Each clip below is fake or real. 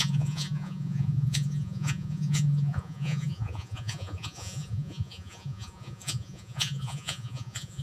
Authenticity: fake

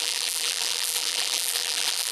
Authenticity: fake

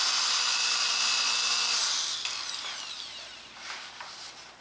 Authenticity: real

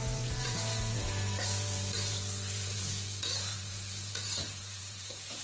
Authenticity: fake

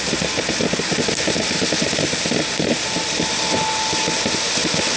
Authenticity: real